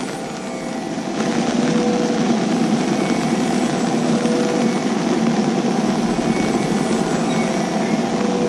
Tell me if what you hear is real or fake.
real